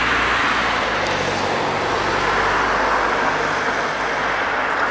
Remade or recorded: recorded